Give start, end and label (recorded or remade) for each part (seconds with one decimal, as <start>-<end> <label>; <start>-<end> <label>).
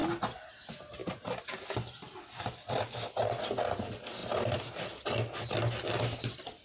0.0-6.6 recorded